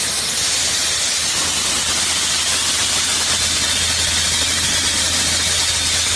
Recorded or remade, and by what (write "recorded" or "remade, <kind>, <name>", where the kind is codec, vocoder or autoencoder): recorded